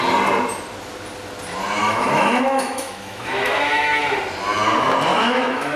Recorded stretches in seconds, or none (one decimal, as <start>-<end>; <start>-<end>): 0.0-1.8; 4.0-5.1